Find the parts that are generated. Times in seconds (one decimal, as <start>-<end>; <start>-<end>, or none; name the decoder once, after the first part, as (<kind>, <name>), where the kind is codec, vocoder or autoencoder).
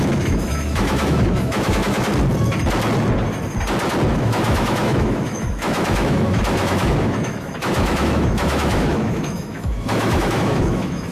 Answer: 0.0-2.1 (autoencoder, DAC-VAE); 4.1-11.1